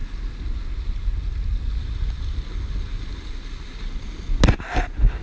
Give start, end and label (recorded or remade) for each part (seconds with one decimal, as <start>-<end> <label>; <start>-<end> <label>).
0.0-5.2 recorded